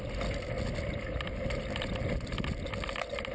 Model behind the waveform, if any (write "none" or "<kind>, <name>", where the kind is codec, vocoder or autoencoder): none